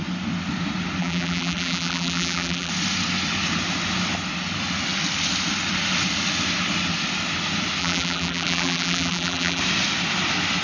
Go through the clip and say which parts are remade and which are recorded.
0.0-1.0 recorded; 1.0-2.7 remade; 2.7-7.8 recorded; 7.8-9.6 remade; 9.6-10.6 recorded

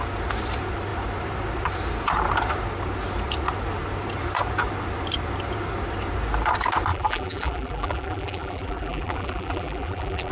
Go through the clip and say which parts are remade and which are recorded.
0.0-6.9 recorded; 6.9-10.3 remade

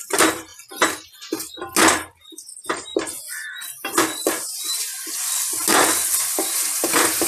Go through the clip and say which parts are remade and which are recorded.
0.0-0.5 remade; 0.5-2.0 recorded; 2.0-2.9 remade; 2.9-4.3 recorded; 4.3-4.9 remade; 4.9-6.3 recorded; 6.3-7.3 remade